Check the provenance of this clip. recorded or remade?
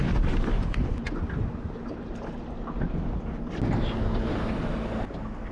recorded